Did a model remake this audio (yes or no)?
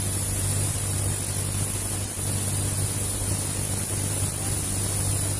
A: no